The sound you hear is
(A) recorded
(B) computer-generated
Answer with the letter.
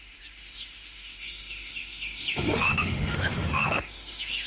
B